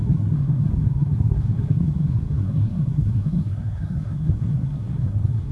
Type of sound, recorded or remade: remade